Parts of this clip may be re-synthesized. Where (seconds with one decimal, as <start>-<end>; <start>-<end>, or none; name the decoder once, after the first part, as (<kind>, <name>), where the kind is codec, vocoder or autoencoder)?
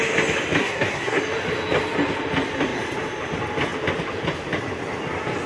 0.6-1.2 (codec, SNAC)